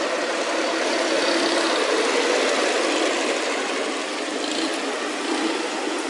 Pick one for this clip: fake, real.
real